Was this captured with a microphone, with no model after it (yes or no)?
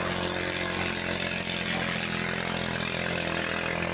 yes